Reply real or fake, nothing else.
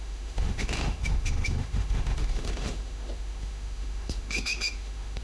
fake